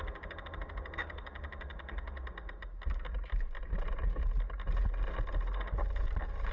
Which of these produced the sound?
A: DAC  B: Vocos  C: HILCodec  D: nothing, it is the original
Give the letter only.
D